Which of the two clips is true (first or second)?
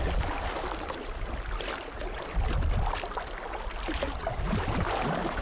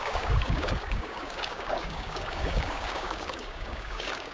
first